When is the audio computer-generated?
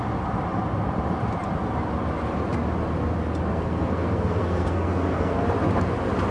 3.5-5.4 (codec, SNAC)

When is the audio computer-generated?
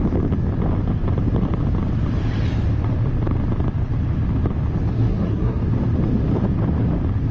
4.9-5.6 (codec, SNAC)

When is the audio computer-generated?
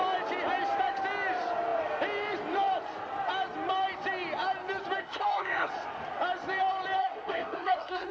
5.0-5.7 (codec, SNAC); 7.0-8.1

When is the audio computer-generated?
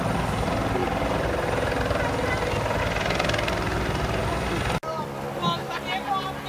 none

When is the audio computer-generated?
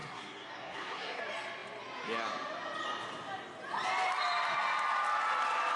0.0-1.2 (codec, SNAC)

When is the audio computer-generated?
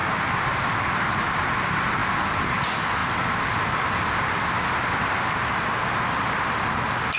none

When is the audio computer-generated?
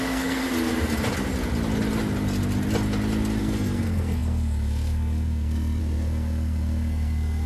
0.0-0.4 (codec, SNAC); 3.4-7.5